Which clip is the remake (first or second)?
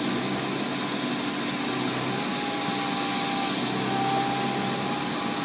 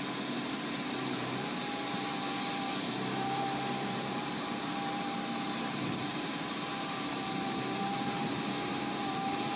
second